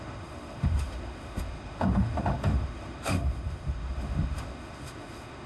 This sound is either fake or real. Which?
fake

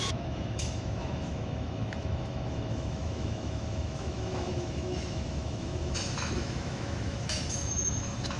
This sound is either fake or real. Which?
fake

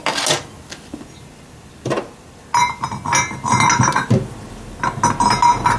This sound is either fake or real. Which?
real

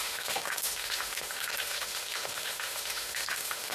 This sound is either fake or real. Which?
fake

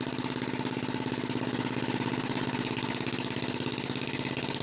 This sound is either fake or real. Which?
real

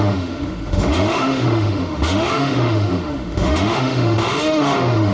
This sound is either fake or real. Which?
fake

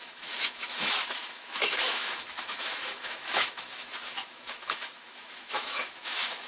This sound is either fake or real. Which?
fake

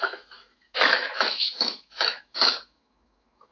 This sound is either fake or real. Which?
fake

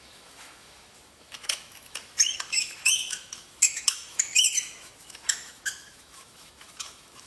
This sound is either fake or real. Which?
fake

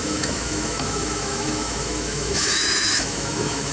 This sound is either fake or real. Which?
fake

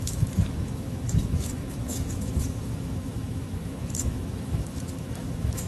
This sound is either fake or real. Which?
fake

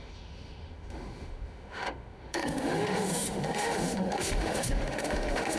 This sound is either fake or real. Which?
fake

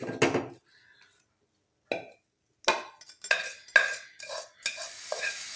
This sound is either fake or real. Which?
real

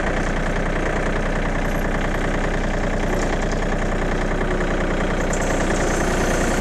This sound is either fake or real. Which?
real